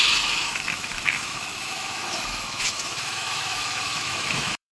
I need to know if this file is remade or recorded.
remade